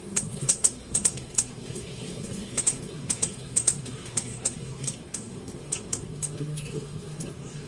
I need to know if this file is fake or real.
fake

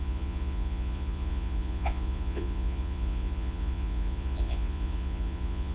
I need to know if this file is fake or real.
fake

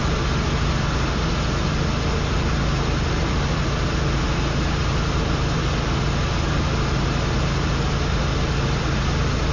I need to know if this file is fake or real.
real